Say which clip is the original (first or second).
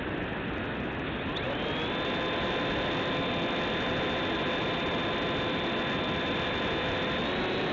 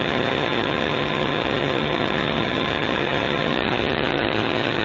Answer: first